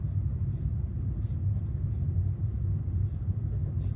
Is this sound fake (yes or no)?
no